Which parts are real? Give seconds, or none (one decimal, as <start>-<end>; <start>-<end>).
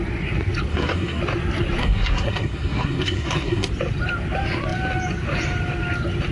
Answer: 0.0-0.7; 1.2-1.8; 3.7-6.3